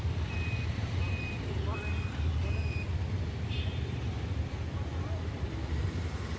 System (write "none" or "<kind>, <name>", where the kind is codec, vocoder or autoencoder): vocoder, BigVGAN v2